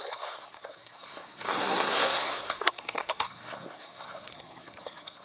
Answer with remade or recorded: remade